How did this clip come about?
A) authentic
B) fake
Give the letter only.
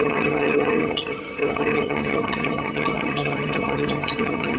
B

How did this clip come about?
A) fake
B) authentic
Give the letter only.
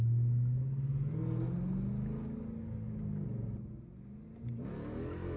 B